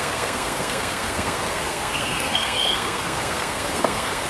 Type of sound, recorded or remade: remade